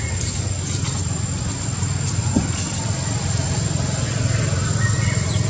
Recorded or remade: recorded